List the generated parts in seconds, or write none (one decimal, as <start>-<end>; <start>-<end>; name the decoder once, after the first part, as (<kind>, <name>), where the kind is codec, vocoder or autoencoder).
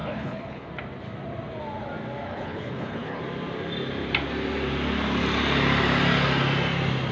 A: 0.0-0.7 (codec, HILCodec); 2.3-3.2